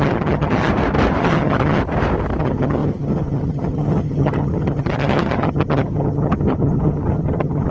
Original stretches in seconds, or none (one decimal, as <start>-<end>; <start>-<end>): 0.7-1.2; 1.8-2.4